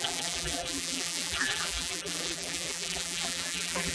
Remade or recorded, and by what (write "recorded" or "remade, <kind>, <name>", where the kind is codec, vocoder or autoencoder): remade, vocoder, BigVGAN v2